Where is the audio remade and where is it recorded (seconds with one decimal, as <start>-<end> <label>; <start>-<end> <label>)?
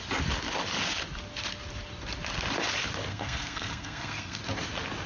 0.0-3.1 recorded; 3.1-4.4 remade; 4.4-5.1 recorded